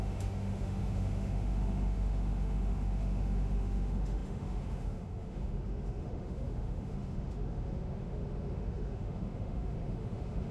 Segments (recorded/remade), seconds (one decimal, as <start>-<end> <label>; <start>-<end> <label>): 0.0-10.5 remade